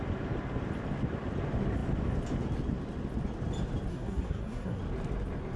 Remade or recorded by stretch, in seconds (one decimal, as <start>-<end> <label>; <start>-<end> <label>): 0.0-3.9 recorded; 3.9-4.8 remade; 4.8-5.6 recorded